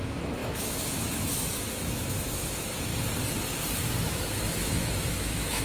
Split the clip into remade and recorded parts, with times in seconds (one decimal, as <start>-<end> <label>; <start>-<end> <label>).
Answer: 0.0-2.9 remade; 2.9-4.0 recorded; 4.0-5.6 remade

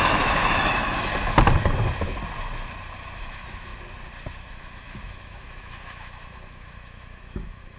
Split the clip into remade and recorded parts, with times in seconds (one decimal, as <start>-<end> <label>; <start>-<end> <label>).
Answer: 0.0-1.1 remade; 1.1-3.2 recorded; 3.2-3.7 remade; 3.7-4.5 recorded; 4.5-7.8 remade

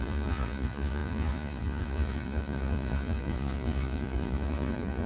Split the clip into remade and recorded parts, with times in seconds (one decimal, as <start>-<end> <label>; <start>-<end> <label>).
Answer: 0.0-5.1 remade

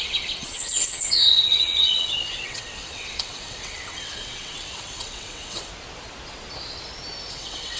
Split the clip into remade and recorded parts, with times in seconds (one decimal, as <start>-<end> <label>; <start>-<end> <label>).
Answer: 0.0-5.7 remade; 5.7-7.3 recorded; 7.3-7.8 remade

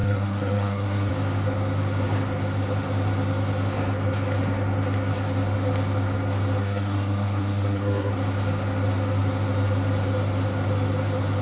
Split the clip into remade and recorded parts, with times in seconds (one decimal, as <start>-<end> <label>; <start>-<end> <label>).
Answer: 0.0-1.1 remade; 1.1-6.6 recorded; 6.6-8.1 remade; 8.1-11.4 recorded

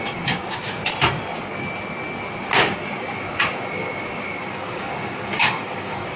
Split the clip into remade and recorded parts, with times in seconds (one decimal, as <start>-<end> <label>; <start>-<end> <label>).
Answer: 0.0-0.8 remade; 0.8-4.5 recorded; 4.5-6.2 remade

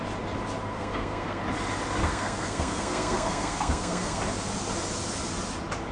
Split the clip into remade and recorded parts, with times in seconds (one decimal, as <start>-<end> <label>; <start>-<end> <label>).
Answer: 0.0-0.6 recorded; 0.6-1.4 remade; 1.4-2.0 recorded; 2.0-4.2 remade; 4.2-5.9 recorded